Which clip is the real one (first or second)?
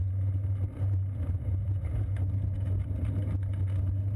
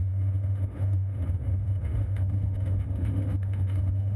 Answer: first